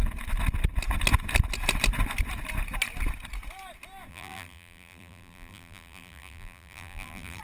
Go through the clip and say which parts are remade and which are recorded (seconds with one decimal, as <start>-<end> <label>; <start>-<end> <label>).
0.0-4.1 recorded; 4.1-7.4 remade